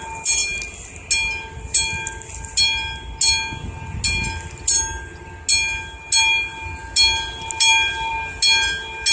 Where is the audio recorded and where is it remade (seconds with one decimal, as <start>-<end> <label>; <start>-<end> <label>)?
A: 0.0-9.1 recorded

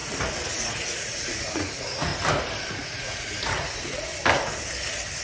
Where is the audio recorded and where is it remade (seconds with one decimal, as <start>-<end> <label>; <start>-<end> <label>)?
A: 0.0-0.5 recorded; 0.5-2.1 remade; 2.1-2.7 recorded; 2.7-4.1 remade; 4.1-5.2 recorded

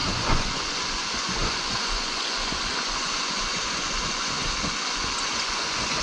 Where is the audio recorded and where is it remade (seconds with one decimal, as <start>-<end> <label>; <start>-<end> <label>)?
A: 0.0-6.0 remade